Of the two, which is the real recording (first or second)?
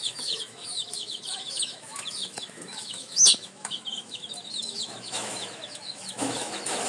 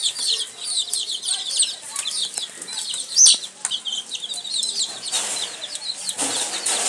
second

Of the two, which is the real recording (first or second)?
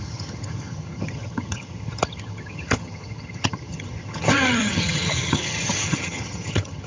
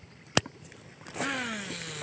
second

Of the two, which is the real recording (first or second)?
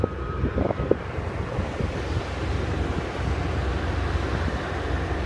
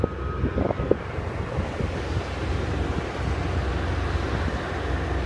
second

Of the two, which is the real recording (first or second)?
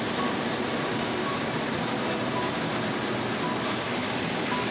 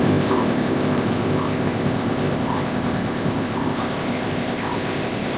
first